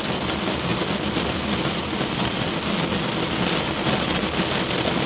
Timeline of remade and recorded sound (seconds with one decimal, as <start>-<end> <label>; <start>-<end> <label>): 0.0-5.1 recorded